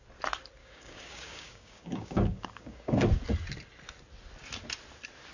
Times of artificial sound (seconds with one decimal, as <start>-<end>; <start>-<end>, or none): 0.6-3.2